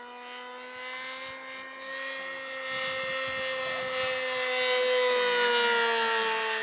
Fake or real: real